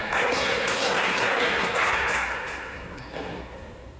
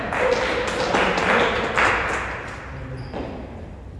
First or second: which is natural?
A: second